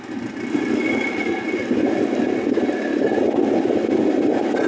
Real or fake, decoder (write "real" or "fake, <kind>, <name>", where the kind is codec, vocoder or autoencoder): real